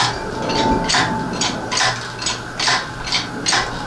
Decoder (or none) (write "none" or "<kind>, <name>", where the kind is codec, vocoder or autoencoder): none